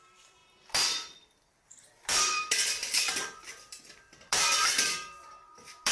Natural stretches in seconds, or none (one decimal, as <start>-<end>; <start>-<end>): none